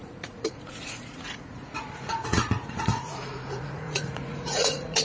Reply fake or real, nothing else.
fake